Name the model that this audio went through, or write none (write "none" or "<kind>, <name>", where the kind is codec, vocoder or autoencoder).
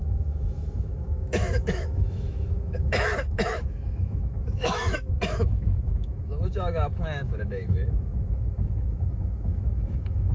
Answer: autoencoder, DAC-VAE